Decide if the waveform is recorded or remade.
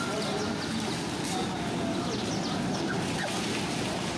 recorded